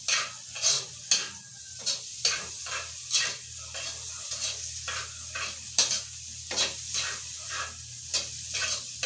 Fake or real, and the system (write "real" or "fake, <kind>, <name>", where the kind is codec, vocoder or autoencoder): real